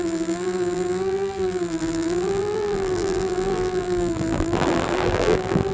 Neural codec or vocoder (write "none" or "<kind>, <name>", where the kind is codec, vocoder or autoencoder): vocoder, BigVGAN v2